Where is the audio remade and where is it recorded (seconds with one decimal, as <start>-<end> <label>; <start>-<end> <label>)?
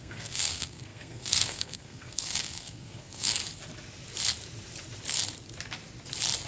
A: 0.0-3.4 remade; 3.4-6.5 recorded